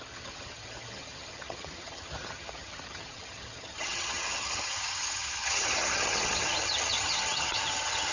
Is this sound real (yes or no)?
no